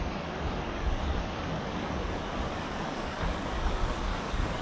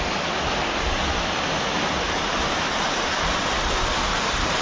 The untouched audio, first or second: second